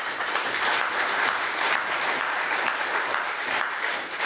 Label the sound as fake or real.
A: fake